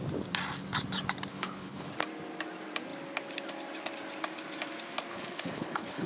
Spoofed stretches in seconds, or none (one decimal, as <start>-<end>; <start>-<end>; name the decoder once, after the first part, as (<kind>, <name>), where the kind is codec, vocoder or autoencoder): 1.3-1.9 (codec, HILCodec); 5.1-6.1